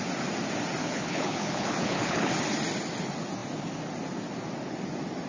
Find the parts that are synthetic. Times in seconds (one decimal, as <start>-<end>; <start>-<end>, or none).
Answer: 0.8-2.3